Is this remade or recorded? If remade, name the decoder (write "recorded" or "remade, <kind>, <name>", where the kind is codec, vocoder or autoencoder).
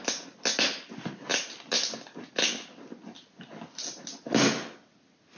recorded